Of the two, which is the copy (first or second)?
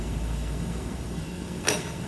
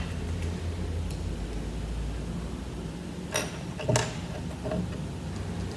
first